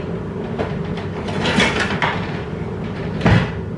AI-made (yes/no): no